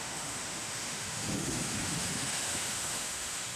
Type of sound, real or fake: fake